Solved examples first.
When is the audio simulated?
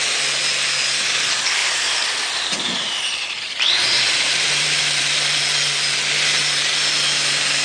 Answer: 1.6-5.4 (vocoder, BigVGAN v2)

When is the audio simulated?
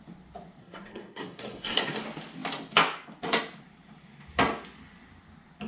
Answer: 0.6-2.0 (codec, SNAC)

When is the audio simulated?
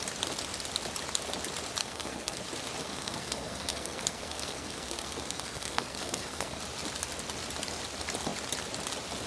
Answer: 1.8-2.4 (codec, SNAC); 2.8-6.6